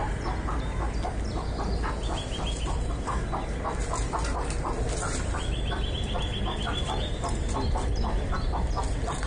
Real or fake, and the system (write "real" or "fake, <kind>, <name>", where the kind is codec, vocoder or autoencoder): real